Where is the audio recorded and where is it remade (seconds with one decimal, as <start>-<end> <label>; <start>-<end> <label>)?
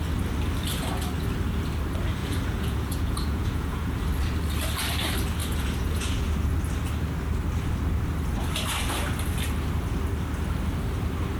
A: 0.0-2.2 recorded; 2.2-4.0 remade; 4.0-5.4 recorded; 5.4-6.2 remade; 6.2-11.4 recorded